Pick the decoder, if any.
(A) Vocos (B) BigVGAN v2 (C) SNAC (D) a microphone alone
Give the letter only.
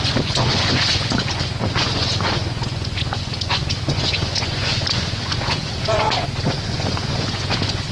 A